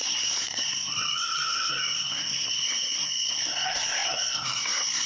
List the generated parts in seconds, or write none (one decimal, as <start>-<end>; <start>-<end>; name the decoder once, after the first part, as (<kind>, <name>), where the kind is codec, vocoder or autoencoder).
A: 0.0-5.1 (codec, SNAC)